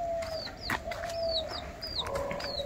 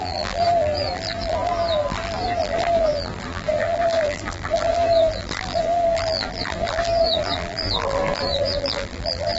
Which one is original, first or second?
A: first